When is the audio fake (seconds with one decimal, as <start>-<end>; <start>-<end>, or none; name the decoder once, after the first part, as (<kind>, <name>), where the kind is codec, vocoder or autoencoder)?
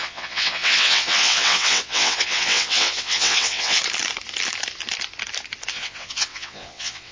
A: 0.0-3.8 (vocoder, WaveNeXt); 5.7-7.1